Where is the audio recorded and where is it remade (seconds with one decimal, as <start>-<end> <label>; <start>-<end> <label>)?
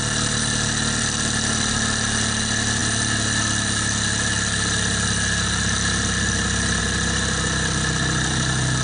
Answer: 0.0-8.8 recorded